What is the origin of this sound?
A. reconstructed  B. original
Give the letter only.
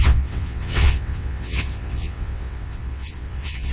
A